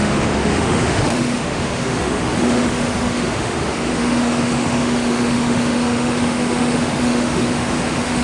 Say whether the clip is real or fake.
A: fake